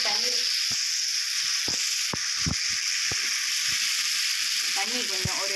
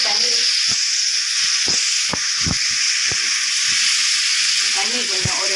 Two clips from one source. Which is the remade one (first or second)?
second